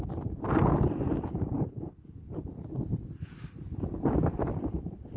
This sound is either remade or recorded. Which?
recorded